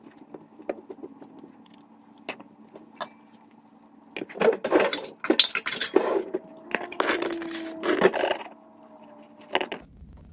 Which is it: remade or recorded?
recorded